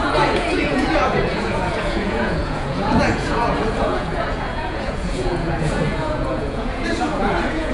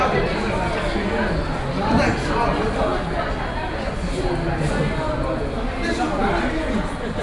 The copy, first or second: first